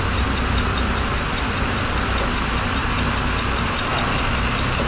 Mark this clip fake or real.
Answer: real